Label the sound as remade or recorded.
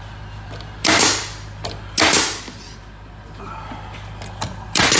recorded